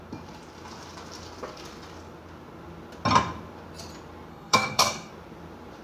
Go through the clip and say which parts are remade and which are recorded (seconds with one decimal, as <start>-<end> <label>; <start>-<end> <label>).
0.0-4.3 recorded; 4.3-5.1 remade; 5.1-5.8 recorded